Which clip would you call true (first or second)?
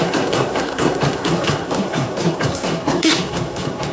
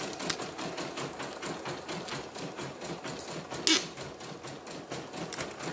second